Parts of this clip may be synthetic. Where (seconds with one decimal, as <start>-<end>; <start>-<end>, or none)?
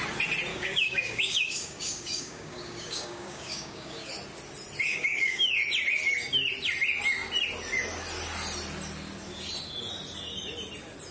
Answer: 0.5-4.1; 4.9-5.5